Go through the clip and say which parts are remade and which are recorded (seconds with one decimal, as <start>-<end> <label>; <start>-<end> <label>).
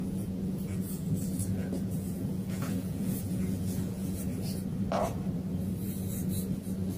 0.0-4.2 remade; 4.2-7.0 recorded